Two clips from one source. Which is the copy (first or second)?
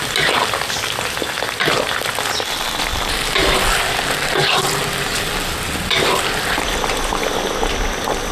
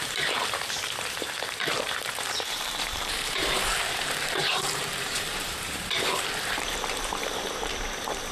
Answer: second